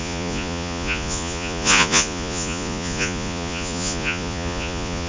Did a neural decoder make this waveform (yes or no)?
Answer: yes